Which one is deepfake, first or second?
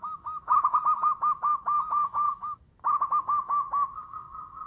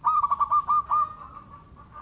first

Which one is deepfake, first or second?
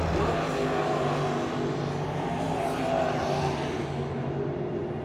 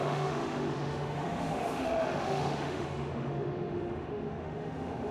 second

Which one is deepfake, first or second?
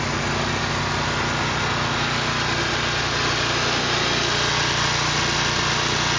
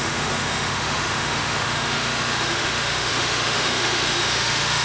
second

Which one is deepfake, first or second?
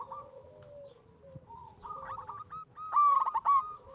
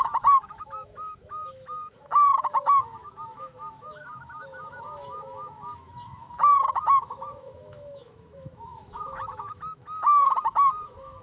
second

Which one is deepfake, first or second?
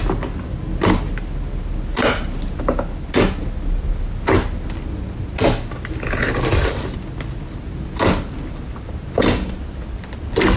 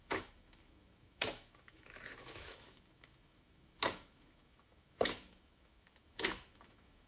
second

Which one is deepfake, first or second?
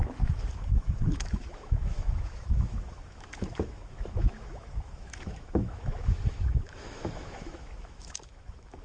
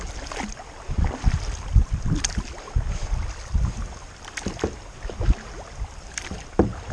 first